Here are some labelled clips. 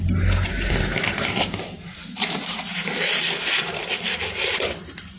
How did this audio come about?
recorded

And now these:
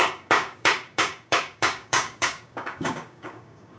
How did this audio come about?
remade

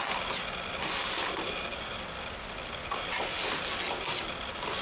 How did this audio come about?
recorded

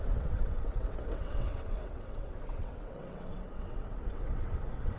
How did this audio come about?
remade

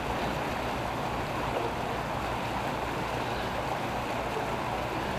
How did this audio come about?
recorded